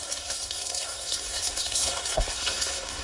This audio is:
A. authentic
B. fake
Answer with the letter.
B